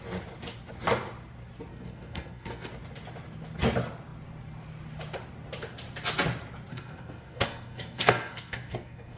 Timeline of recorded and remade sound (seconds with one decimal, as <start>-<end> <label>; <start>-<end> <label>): 0.0-1.7 recorded; 1.7-2.7 remade; 2.7-6.7 recorded; 6.7-9.2 remade